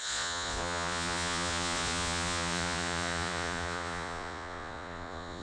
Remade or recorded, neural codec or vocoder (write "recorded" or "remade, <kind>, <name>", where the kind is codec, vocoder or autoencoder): remade, vocoder, Vocos